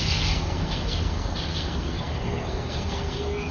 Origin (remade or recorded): remade